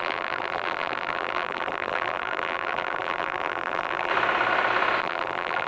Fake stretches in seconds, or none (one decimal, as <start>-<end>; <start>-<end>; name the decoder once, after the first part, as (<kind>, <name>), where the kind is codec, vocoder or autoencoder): 0.0-4.1 (vocoder, BigVGAN v2); 5.0-5.7